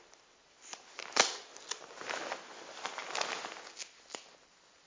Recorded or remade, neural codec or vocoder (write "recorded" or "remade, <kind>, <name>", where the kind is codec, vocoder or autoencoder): recorded